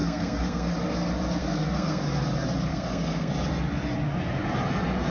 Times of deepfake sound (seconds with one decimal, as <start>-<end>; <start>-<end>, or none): 0.0-0.7; 1.4-2.0; 2.7-3.3